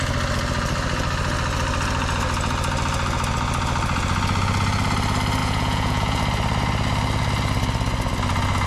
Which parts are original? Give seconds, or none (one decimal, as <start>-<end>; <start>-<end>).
0.0-5.4; 6.2-8.7